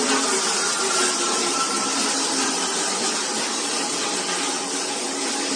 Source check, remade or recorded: recorded